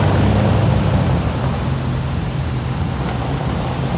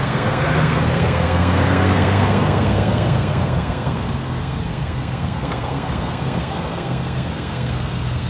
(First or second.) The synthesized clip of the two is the second